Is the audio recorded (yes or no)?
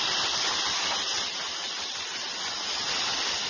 yes